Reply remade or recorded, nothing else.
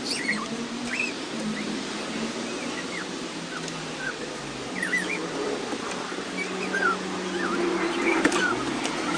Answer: recorded